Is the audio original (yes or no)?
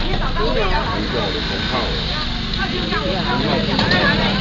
yes